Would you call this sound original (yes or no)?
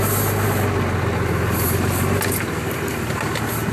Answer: yes